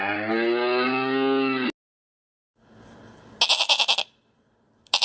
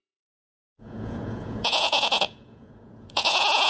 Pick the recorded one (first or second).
first